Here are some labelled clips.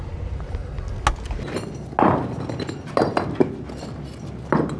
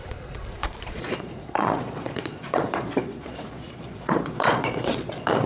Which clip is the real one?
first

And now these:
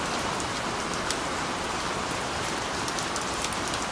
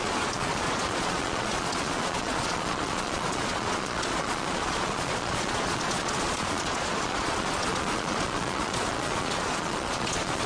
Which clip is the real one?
first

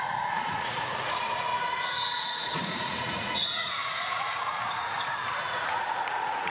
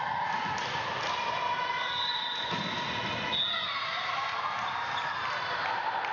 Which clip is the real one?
second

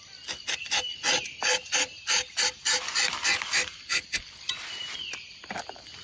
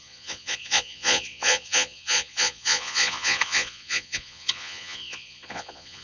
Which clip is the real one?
first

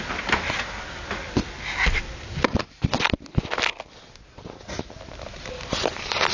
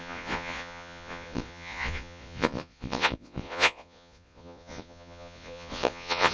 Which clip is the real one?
first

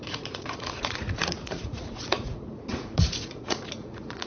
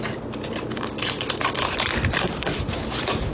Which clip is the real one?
second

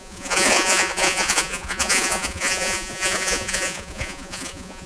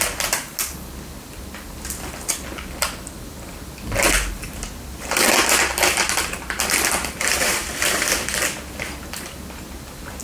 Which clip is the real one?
second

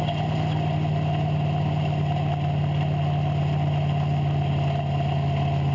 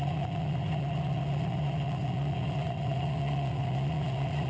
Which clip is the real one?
first